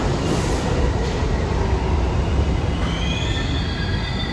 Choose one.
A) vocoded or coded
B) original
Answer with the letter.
B